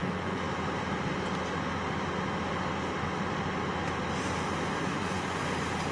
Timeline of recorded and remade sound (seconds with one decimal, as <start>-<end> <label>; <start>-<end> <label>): 0.0-0.5 remade; 0.5-4.9 recorded; 4.9-5.4 remade; 5.4-5.9 recorded